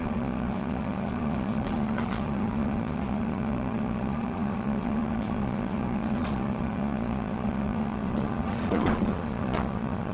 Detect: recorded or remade remade